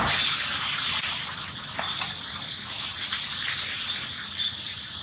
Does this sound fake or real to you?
real